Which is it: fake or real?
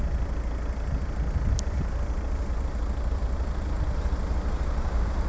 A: real